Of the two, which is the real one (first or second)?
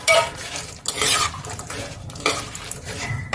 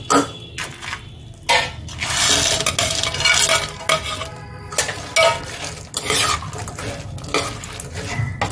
second